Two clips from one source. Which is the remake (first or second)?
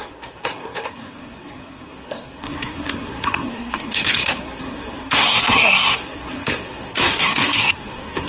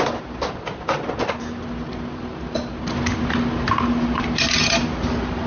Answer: first